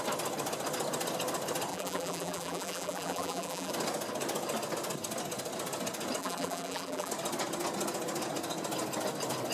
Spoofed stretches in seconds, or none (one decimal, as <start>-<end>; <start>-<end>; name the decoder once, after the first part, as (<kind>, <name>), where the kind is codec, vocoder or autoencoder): 1.7-3.7 (vocoder, BigVGAN v2); 6.2-7.1